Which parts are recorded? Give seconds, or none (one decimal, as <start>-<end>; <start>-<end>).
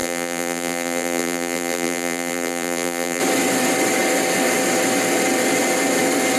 3.2-6.4